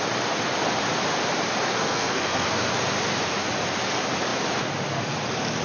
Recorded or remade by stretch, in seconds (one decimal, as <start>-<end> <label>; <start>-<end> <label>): 0.0-1.7 recorded; 1.7-2.7 remade; 2.7-5.6 recorded